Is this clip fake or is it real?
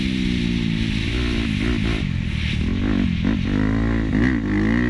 real